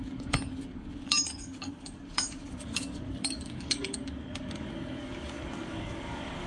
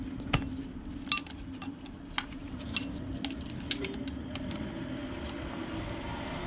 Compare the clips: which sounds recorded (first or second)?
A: second